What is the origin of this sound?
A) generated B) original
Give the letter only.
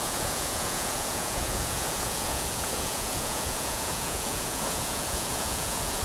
A